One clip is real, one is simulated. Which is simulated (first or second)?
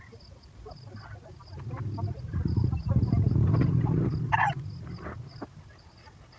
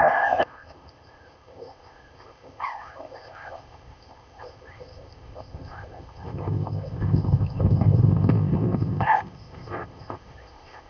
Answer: second